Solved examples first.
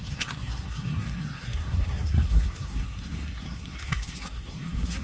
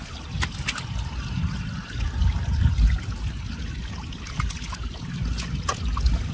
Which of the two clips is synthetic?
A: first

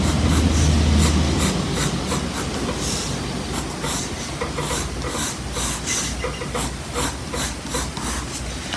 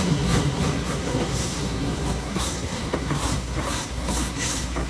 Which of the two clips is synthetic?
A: second